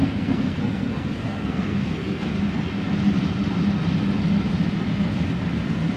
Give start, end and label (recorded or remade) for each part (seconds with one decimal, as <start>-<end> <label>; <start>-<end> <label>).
0.0-2.3 remade; 2.3-6.0 recorded

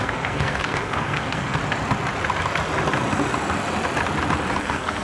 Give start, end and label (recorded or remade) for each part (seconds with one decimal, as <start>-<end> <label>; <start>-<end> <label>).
0.0-1.6 remade; 1.6-4.6 recorded; 4.6-5.0 remade

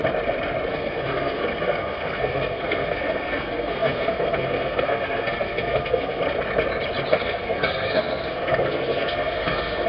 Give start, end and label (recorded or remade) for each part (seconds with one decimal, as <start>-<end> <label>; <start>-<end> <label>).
0.0-0.7 recorded; 0.7-6.2 remade; 6.2-7.1 recorded; 7.1-9.9 remade

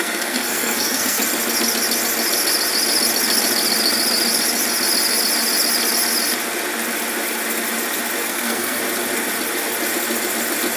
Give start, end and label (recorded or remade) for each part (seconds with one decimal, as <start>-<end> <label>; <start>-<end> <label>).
0.0-1.2 remade; 1.2-8.2 recorded; 8.2-8.8 remade; 8.8-10.8 recorded

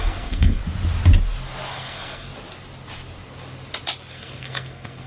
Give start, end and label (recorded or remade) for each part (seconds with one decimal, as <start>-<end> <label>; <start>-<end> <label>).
0.0-0.6 remade; 0.6-1.7 recorded; 1.7-2.3 remade; 2.3-4.1 recorded; 4.1-5.1 remade

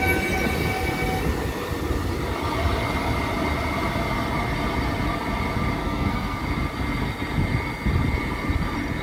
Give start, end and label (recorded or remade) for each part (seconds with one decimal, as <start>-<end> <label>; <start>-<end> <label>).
0.0-5.8 recorded; 5.8-6.4 remade; 6.4-9.0 recorded